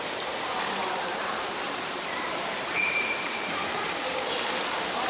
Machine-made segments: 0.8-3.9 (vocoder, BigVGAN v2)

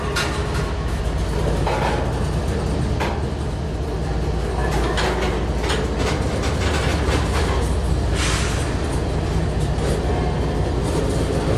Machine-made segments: 0.4-1.0 (autoencoder, DAC-VAE)

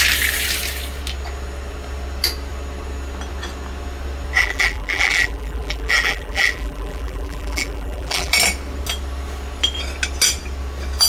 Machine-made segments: 4.4-8.3 (vocoder, BigVGAN v2)